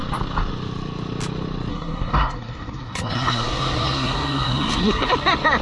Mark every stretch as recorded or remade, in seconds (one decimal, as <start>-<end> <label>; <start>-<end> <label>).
0.0-1.7 recorded; 1.7-5.1 remade; 5.1-5.6 recorded